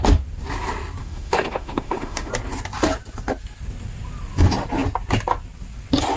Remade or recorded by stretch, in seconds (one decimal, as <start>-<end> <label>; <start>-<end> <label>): 0.0-1.0 recorded; 1.0-2.3 remade; 2.3-6.2 recorded